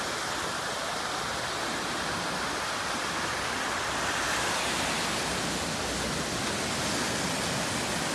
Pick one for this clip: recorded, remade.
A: recorded